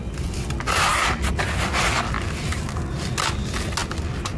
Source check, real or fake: real